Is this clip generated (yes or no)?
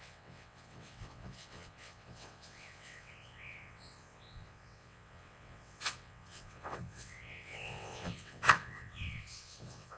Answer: yes